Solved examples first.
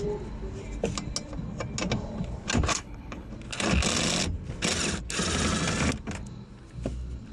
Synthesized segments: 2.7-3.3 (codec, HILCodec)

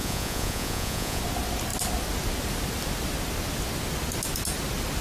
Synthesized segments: 0.0-1.2 (vocoder, Vocos)

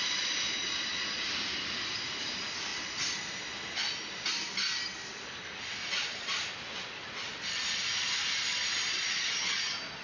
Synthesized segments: none